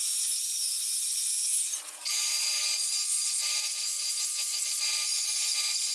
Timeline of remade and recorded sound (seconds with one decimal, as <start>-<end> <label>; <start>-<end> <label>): 0.0-0.8 remade; 0.8-1.4 recorded; 1.4-2.6 remade; 2.6-3.4 recorded; 3.4-4.6 remade; 4.6-5.9 recorded